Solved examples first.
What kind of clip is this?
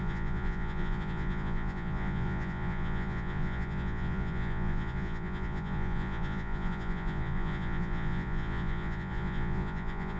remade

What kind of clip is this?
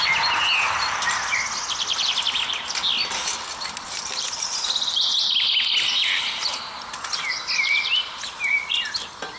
recorded